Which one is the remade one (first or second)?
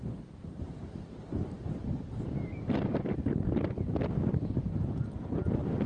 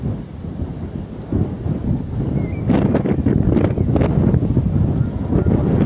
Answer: first